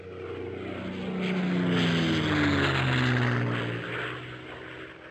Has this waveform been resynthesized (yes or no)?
no